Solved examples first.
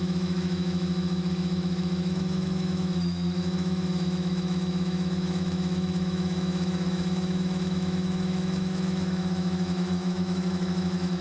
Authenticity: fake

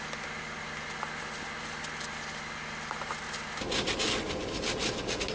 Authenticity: real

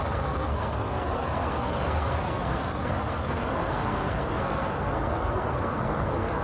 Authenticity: fake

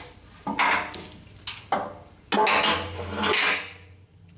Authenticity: real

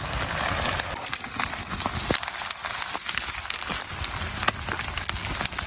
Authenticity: real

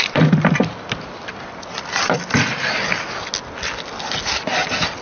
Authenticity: real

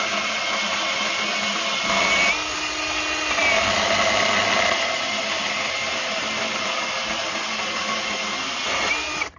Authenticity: real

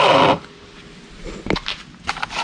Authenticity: real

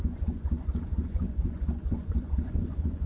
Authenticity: fake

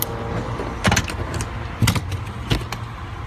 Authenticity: real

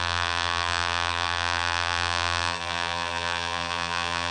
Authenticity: fake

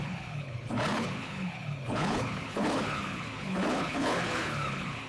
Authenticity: fake